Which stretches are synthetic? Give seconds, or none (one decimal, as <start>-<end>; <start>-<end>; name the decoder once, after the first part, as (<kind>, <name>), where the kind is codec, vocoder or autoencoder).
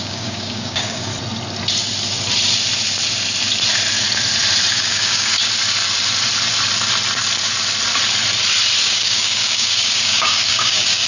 0.0-1.1 (codec, DAC); 4.7-5.4; 8.8-11.1